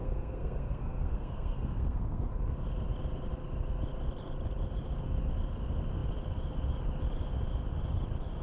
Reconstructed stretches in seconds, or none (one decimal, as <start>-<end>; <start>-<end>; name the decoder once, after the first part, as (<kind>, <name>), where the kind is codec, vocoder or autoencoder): 0.0-2.3 (codec, SNAC)